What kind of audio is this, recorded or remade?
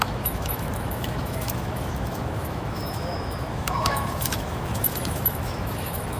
remade